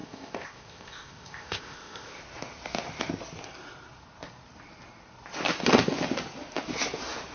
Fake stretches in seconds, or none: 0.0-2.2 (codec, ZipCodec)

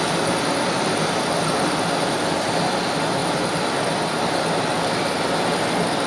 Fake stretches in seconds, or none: none